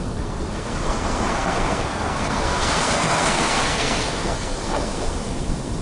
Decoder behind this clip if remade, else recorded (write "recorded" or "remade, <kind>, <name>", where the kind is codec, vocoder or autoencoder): remade, codec, SNAC